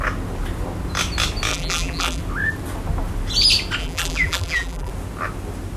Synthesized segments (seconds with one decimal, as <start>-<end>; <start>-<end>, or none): 1.5-2.2; 3.8-4.9